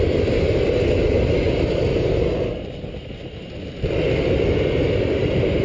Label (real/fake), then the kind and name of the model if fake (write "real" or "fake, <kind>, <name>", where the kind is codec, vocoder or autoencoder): real